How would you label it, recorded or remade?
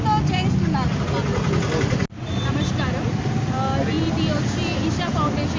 recorded